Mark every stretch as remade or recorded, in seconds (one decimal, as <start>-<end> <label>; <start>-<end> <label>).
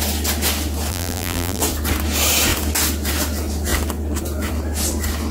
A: 0.0-0.9 recorded; 0.9-1.6 remade; 1.6-5.3 recorded